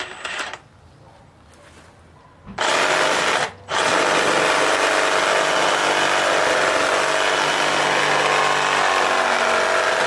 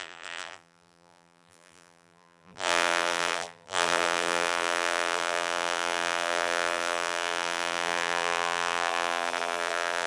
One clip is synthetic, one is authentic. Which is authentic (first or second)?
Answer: first